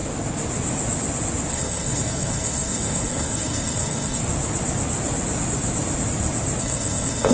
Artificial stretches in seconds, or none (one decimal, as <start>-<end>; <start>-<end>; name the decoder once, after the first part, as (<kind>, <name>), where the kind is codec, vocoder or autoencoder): 1.5-4.2 (codec, SNAC); 6.6-7.3